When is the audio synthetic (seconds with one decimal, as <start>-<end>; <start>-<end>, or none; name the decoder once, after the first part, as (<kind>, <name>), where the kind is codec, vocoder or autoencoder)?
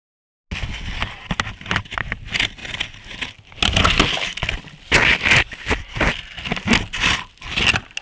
none